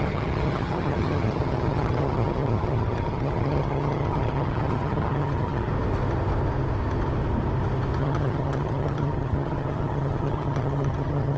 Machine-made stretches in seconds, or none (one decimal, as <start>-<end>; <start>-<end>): 0.0-5.7; 8.0-11.4